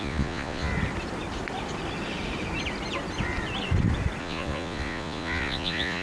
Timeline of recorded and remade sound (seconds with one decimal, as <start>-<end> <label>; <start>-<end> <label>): 0.0-0.7 remade; 0.7-4.2 recorded; 4.2-6.0 remade